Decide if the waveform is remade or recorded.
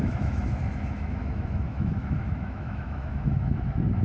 remade